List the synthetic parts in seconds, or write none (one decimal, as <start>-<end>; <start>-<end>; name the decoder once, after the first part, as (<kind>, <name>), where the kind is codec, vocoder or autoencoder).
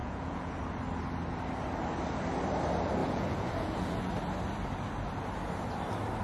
0.0-0.6 (vocoder, Vocos); 3.0-4.1